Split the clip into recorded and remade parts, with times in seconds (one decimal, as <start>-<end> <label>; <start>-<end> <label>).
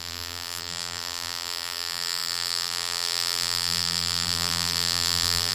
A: 0.0-5.5 remade